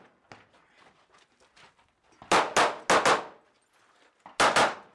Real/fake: real